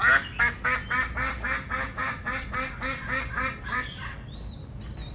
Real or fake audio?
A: real